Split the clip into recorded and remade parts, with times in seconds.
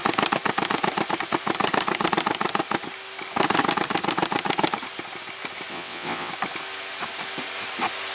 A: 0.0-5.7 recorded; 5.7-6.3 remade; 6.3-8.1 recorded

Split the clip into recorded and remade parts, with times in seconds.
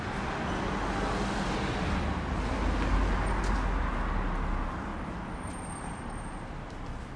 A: 0.0-7.2 recorded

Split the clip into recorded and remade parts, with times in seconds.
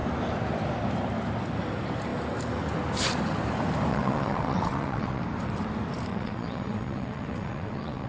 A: 0.0-3.9 recorded; 3.9-5.2 remade; 5.2-6.1 recorded; 6.1-8.1 remade